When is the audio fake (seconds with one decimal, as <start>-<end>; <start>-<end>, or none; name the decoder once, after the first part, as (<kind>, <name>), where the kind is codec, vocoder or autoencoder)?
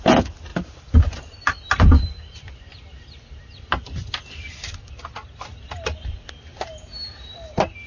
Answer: none